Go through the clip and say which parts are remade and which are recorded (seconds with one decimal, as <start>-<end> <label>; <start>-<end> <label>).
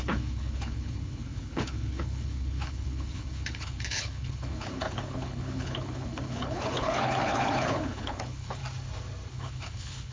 0.0-8.6 remade; 8.6-9.3 recorded; 9.3-10.1 remade